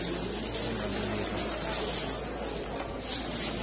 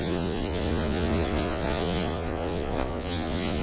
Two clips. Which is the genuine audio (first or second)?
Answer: first